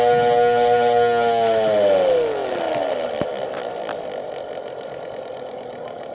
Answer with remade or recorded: recorded